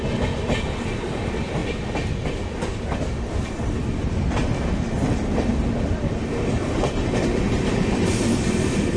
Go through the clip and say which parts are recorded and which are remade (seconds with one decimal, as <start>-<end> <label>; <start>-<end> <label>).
0.0-9.0 recorded

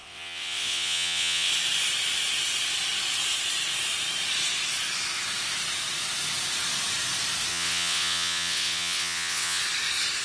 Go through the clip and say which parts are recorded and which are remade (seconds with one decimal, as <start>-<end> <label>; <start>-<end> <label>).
0.0-1.5 remade; 1.5-7.5 recorded; 7.5-9.6 remade; 9.6-10.2 recorded

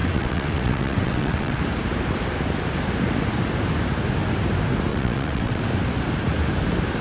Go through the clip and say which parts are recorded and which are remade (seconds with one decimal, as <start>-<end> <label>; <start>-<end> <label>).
0.0-1.6 remade; 1.6-4.9 recorded; 4.9-5.6 remade; 5.6-7.0 recorded

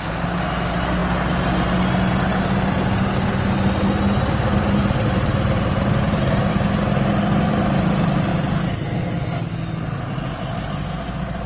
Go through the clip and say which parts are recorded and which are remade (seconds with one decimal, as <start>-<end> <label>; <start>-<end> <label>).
0.0-11.5 recorded

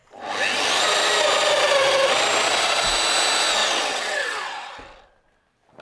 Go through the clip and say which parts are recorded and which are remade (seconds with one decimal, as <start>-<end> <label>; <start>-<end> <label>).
0.0-3.6 recorded; 3.6-4.7 remade; 4.7-5.8 recorded

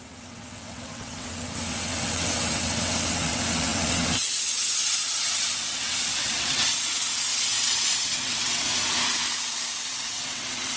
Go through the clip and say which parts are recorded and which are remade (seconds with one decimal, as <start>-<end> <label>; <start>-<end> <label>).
0.0-8.7 remade; 8.7-9.8 recorded; 9.8-10.8 remade